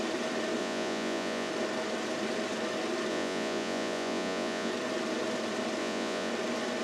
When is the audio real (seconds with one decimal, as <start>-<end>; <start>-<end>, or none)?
0.0-0.6; 1.5-3.1; 4.7-5.8; 6.3-6.8